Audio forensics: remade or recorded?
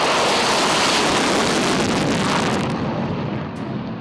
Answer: recorded